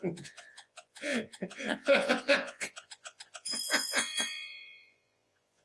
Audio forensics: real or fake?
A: fake